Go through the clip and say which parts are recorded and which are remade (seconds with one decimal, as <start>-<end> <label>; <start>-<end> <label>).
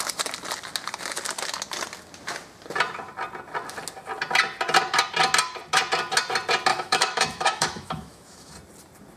0.0-6.7 recorded; 6.7-8.5 remade; 8.5-9.2 recorded